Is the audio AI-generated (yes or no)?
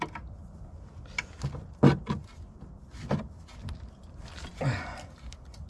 no